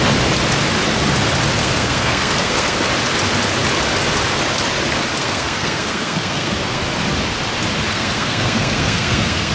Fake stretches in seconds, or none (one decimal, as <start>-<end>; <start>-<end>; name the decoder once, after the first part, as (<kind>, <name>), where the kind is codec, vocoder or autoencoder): 1.6-2.9 (codec, SNAC); 5.2-6.8; 7.9-9.5